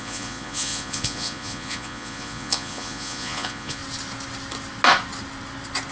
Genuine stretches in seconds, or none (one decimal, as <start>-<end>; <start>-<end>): 3.8-5.9